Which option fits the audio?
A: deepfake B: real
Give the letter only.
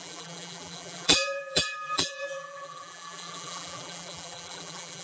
A